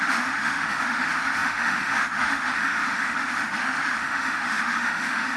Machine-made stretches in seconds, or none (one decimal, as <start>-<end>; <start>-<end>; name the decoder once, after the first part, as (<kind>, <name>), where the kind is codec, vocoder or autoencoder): 0.0-5.4 (autoencoder, DAC-VAE)